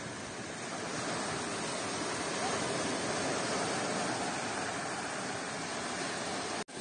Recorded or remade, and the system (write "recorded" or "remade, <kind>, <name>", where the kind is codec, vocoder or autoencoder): recorded